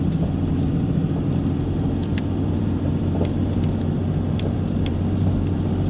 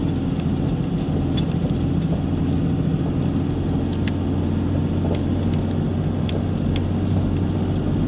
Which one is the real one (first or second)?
second